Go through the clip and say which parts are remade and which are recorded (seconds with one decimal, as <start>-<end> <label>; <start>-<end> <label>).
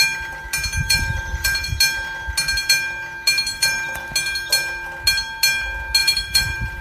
0.0-0.8 recorded; 0.8-1.7 remade; 1.7-3.5 recorded; 3.5-4.0 remade; 4.0-6.0 recorded; 6.0-6.8 remade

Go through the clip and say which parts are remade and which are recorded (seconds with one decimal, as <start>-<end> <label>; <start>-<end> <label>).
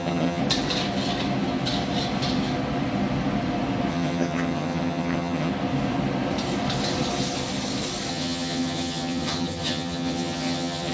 0.0-0.4 remade; 0.4-3.9 recorded; 3.9-5.5 remade; 5.5-8.1 recorded; 8.1-10.9 remade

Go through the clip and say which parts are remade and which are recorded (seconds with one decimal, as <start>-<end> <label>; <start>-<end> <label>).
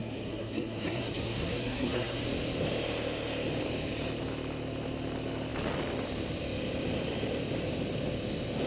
0.0-2.2 remade; 2.2-8.7 recorded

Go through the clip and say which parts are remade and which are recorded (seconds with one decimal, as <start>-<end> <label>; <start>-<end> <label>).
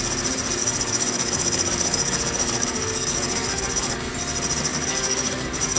0.0-0.6 recorded; 0.6-4.1 remade; 4.1-4.7 recorded; 4.7-5.8 remade